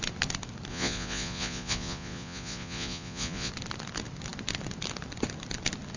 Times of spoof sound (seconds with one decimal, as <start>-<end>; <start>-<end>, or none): 0.7-3.5